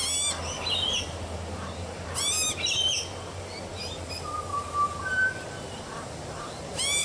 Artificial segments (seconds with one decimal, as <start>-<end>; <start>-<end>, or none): none